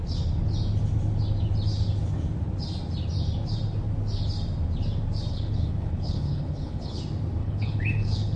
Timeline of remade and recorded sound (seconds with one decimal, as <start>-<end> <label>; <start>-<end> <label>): 0.0-5.3 recorded; 5.3-7.0 remade; 7.0-7.4 recorded; 7.4-8.4 remade